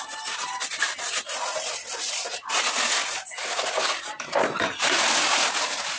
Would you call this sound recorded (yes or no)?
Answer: yes